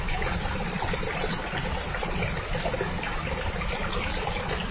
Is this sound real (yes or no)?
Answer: yes